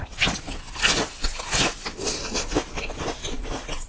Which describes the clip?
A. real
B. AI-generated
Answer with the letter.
A